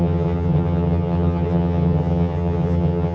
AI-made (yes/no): yes